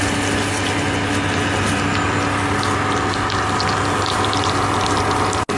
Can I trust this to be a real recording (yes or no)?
yes